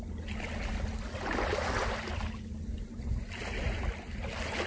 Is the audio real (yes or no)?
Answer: yes